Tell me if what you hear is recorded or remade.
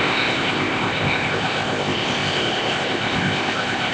remade